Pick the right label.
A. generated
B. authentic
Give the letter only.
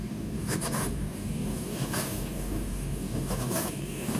A